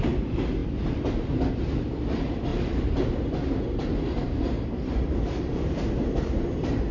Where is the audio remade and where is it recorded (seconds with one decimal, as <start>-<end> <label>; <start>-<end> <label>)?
0.0-2.5 recorded; 2.5-6.9 remade